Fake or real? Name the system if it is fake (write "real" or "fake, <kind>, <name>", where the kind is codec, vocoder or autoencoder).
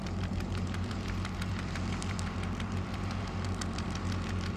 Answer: fake, vocoder, BigVGAN v2